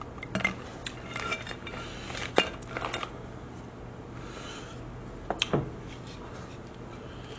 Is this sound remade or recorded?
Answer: recorded